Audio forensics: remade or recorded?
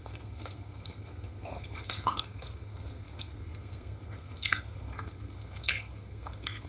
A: remade